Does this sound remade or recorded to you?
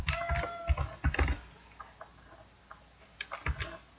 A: recorded